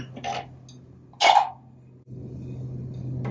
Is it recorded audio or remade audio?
recorded